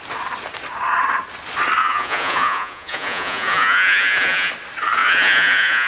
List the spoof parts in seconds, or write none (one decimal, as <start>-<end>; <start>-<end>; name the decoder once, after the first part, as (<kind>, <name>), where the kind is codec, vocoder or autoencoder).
1.8-4.5 (vocoder, Vocos); 5.0-5.9